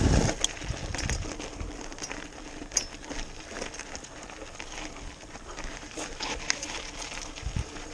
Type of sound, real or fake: real